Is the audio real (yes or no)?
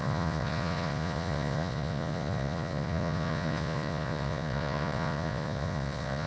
no